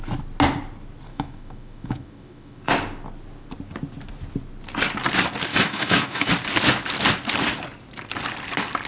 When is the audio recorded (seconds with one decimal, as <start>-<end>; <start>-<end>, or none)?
0.0-1.1; 2.7-5.5; 6.3-8.9

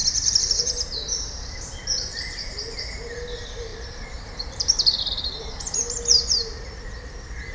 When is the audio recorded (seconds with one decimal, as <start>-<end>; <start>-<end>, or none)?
none

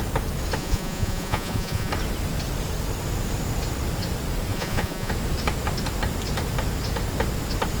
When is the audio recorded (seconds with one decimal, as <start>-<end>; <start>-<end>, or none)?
0.0-0.6; 1.9-4.5; 5.1-7.8

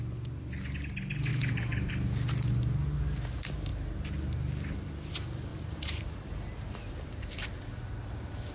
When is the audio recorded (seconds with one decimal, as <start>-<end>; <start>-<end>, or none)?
0.0-1.3; 1.9-5.5; 7.6-8.5

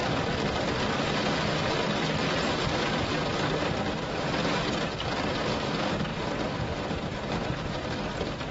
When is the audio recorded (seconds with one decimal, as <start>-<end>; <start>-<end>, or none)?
0.0-8.5

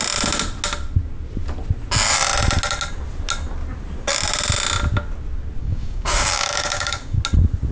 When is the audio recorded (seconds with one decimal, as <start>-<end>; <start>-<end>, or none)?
0.0-5.6; 7.2-7.7